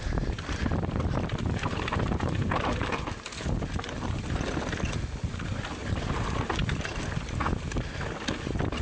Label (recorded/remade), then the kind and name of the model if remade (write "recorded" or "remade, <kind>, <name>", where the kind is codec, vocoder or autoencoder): recorded